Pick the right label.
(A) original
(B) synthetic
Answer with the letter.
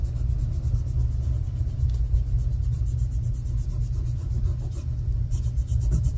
A